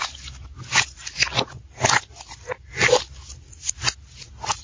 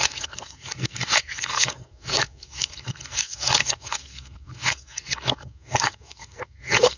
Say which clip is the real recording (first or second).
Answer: first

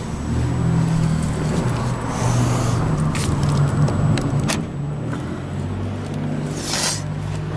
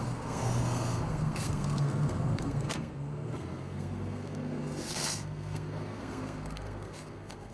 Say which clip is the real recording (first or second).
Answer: first